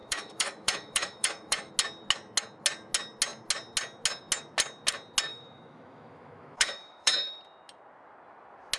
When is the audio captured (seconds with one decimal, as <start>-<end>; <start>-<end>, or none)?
1.7-5.3; 7.4-8.8